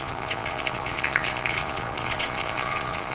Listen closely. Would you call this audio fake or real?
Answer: fake